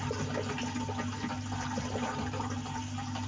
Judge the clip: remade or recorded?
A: recorded